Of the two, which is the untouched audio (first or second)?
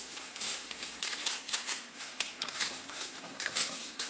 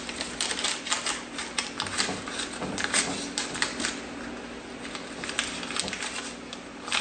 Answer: second